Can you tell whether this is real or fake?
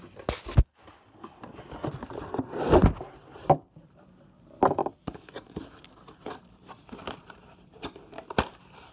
real